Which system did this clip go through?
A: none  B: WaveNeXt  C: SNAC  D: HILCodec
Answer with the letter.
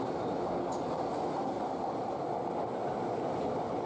A